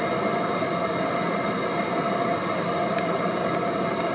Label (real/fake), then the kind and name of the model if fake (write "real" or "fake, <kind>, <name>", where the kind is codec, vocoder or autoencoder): real